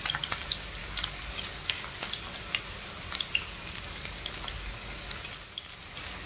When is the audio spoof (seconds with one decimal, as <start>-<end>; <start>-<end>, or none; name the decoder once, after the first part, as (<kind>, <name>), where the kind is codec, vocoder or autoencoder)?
0.8-1.8 (codec, DAC); 3.4-5.3